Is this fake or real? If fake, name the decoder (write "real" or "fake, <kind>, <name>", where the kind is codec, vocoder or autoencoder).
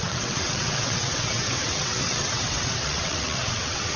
fake, vocoder, WaveNeXt